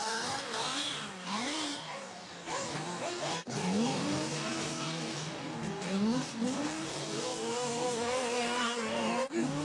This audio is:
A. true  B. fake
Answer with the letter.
B